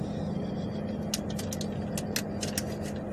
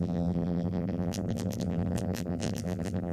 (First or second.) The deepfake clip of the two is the second